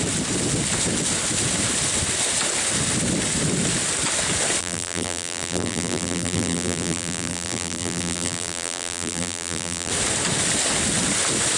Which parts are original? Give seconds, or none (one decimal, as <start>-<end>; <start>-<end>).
0.0-4.6; 9.9-11.6